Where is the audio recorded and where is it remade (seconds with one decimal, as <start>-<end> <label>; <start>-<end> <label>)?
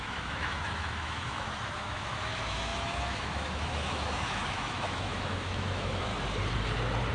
0.0-6.1 remade; 6.1-7.1 recorded